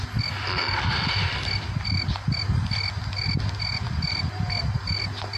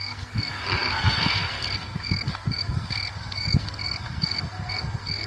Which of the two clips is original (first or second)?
first